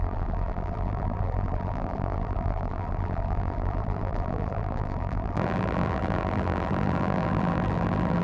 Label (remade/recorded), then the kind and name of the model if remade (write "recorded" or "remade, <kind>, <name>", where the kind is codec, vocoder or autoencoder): remade, vocoder, BigVGAN v2